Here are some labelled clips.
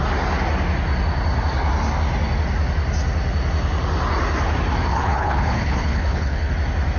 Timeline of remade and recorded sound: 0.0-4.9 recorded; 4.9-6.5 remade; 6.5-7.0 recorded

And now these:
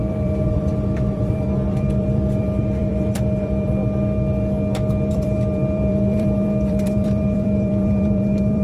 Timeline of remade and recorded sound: 0.0-3.8 remade; 3.8-5.1 recorded; 5.1-8.6 remade

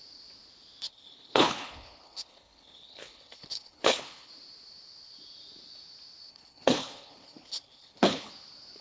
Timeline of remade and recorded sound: 0.0-0.8 recorded; 0.8-4.3 remade; 4.3-6.3 recorded; 6.3-8.3 remade; 8.3-8.8 recorded

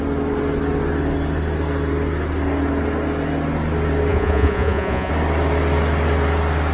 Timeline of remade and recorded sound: 0.0-4.1 recorded; 4.1-5.1 remade; 5.1-6.7 recorded

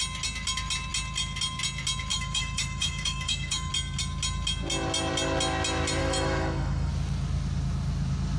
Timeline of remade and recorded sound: 0.0-2.1 recorded; 2.1-3.7 remade; 3.7-6.0 recorded; 6.0-6.9 remade; 6.9-8.4 recorded